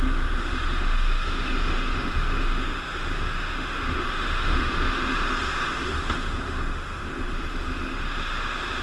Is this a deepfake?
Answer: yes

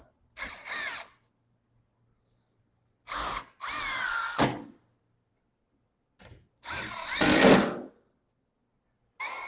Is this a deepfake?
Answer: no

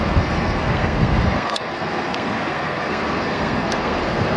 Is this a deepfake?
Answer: yes